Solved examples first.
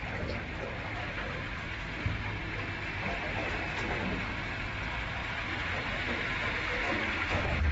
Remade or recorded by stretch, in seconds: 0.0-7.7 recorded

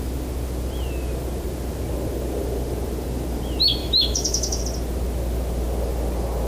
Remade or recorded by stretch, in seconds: 0.0-3.8 recorded; 3.8-4.6 remade; 4.6-6.5 recorded

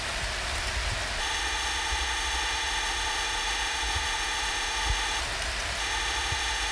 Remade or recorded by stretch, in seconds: 0.0-1.2 recorded; 1.2-5.2 remade; 5.2-5.8 recorded; 5.8-6.7 remade

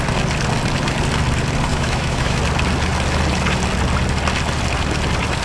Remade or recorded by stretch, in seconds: 0.0-1.7 recorded; 1.7-2.4 remade; 2.4-5.4 recorded

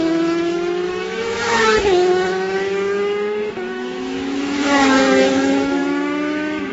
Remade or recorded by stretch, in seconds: 0.0-6.7 remade